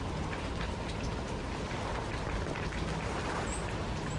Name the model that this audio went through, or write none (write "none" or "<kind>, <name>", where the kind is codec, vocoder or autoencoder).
none